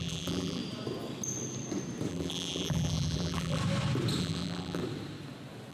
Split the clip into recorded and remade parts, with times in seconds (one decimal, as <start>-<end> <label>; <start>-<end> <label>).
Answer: 0.0-0.6 remade; 0.6-2.1 recorded; 2.1-3.6 remade; 3.6-4.2 recorded; 4.2-4.8 remade; 4.8-5.7 recorded